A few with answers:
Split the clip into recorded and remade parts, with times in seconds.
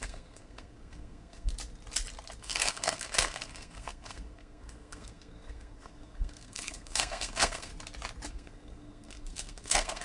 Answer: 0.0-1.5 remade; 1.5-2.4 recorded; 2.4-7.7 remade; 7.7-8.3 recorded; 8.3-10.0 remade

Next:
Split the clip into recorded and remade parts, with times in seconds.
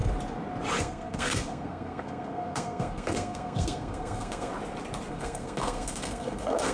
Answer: 0.0-0.8 recorded; 0.8-4.5 remade; 4.5-5.1 recorded; 5.1-6.7 remade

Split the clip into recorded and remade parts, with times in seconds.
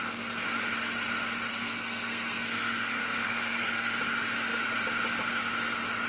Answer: 0.0-1.5 recorded; 1.5-4.0 remade; 4.0-6.1 recorded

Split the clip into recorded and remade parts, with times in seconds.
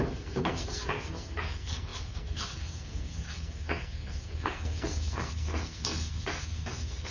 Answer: 0.0-7.1 remade